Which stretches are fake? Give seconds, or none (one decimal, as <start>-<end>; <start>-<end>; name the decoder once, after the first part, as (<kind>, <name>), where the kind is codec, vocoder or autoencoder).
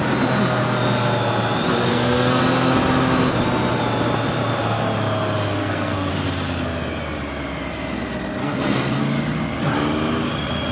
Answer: 1.9-2.4 (codec, SNAC); 5.6-6.1; 8.4-9.0